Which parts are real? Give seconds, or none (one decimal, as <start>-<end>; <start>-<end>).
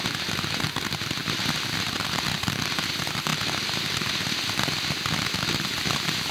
0.0-6.3